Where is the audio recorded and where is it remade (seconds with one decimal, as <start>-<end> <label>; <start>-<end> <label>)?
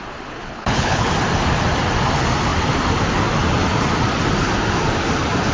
0.0-0.4 recorded; 0.4-1.1 remade; 1.1-5.5 recorded